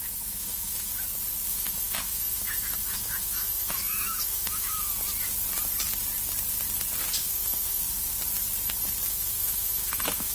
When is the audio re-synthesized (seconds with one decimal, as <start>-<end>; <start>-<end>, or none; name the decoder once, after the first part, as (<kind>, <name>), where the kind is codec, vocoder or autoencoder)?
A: 0.0-0.9 (autoencoder, DAC-VAE); 1.5-4.9; 7.2-7.8; 9.1-10.3